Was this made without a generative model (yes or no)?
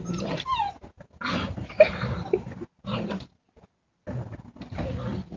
yes